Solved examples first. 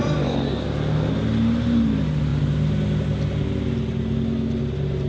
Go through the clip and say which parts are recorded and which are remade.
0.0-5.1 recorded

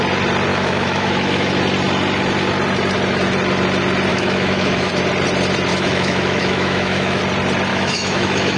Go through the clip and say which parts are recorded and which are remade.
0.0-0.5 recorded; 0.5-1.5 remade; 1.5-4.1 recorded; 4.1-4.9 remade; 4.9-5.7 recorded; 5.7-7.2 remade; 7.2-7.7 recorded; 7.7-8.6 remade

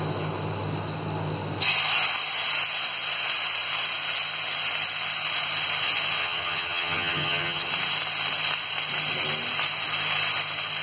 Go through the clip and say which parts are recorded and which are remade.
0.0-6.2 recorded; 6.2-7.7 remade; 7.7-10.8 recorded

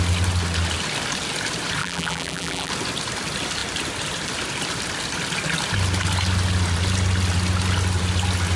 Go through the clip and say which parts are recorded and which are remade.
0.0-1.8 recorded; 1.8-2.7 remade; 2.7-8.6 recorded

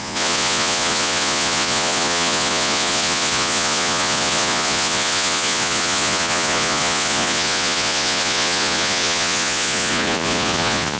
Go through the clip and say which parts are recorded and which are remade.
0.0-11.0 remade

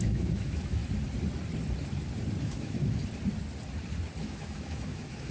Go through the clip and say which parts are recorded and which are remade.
0.0-0.8 remade; 0.8-2.4 recorded; 2.4-3.0 remade; 3.0-4.2 recorded; 4.2-5.3 remade

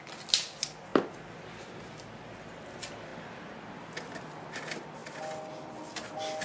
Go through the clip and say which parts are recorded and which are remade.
0.0-6.4 recorded